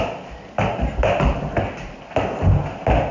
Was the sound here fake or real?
real